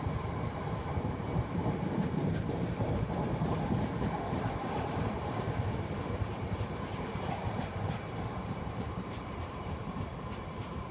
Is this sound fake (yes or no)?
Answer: yes